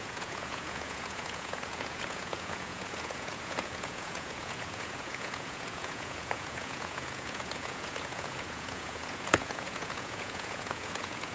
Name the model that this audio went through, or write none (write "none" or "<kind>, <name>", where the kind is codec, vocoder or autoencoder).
vocoder, Vocos